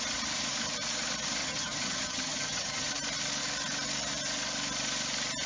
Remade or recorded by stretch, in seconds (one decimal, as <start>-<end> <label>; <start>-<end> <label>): 0.0-1.4 recorded; 1.4-2.9 remade; 2.9-5.5 recorded